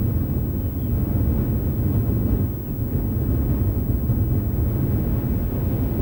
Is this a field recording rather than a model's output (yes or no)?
yes